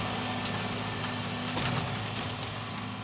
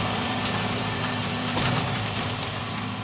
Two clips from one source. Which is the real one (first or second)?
first